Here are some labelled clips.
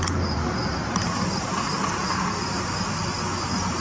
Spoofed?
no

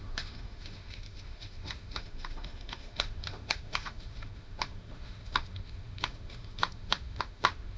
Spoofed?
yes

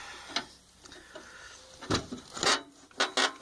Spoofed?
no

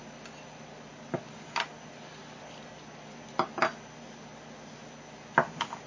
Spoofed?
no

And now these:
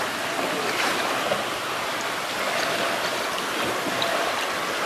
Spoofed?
no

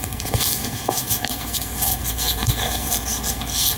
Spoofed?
yes